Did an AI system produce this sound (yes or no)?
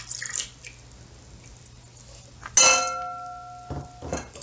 no